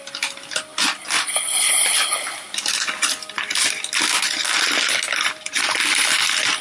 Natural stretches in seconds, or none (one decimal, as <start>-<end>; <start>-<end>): 0.0-6.6